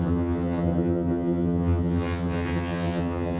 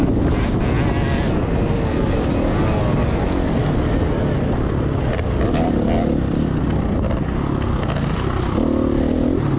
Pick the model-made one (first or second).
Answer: first